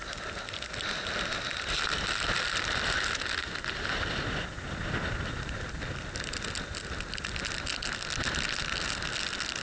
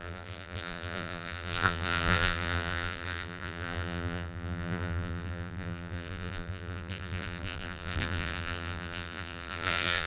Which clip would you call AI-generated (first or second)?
second